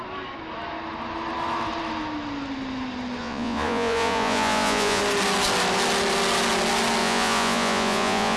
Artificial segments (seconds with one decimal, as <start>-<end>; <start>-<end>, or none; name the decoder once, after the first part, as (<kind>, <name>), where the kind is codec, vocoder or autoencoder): 3.2-5.0 (vocoder, Vocos); 7.0-8.4